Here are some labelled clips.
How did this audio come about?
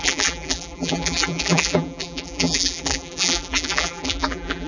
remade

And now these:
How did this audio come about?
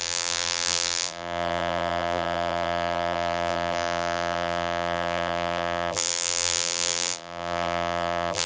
remade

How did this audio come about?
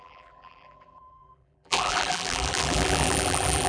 remade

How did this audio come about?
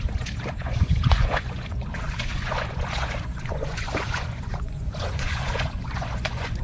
remade